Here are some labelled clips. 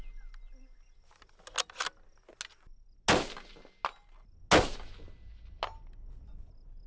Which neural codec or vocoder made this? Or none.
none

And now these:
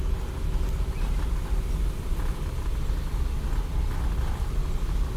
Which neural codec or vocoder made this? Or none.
none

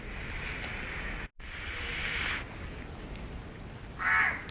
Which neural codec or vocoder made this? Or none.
none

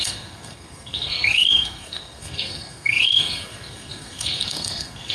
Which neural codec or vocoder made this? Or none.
codec, SNAC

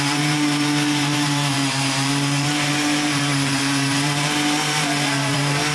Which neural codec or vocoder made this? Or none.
vocoder, BigVGAN v2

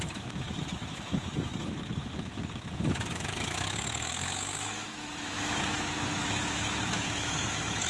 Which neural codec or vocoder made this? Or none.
autoencoder, DAC-VAE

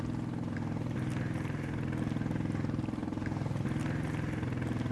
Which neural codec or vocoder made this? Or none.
none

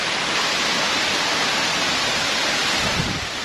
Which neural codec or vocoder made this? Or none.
none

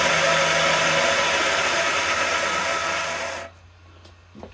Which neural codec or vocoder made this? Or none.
none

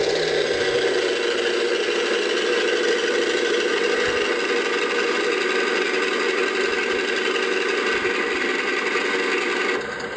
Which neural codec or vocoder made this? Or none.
none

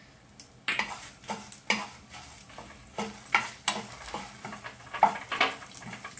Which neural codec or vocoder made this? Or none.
none